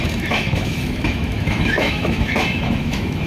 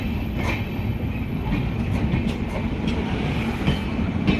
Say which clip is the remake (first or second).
first